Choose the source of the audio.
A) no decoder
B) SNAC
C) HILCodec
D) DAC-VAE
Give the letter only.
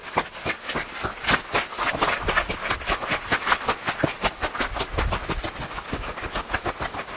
A